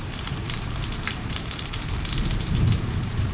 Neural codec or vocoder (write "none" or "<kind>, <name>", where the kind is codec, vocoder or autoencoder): vocoder, BigVGAN v2